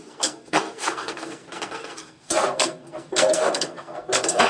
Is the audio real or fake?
fake